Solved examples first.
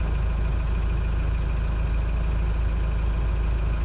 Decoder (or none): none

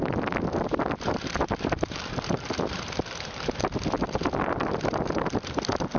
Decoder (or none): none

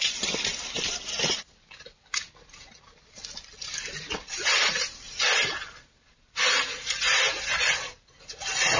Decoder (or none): none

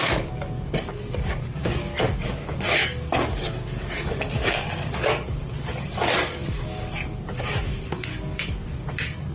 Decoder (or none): codec, DAC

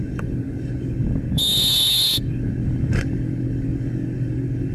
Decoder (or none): codec, DAC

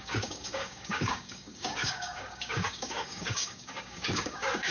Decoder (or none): codec, DAC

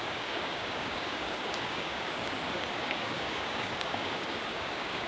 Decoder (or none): codec, DAC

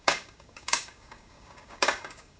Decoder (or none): codec, DAC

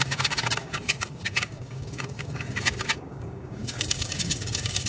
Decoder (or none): codec, DAC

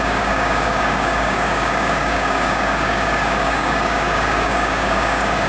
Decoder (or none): codec, DAC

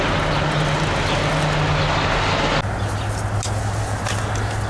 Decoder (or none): none